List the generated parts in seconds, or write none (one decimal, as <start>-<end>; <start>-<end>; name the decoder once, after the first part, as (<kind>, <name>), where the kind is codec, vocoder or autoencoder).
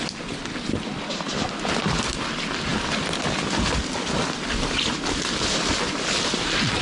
none